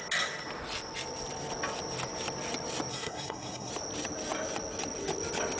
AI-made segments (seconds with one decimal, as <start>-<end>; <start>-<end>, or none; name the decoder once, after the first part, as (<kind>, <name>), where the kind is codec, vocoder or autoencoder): 2.9-3.7 (codec, SNAC)